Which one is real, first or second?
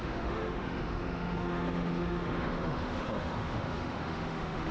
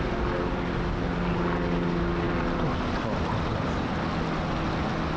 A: second